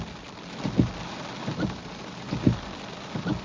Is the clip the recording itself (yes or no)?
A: yes